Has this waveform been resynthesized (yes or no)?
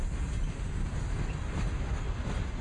no